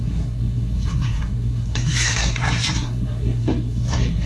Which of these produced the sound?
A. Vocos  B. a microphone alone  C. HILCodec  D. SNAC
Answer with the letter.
D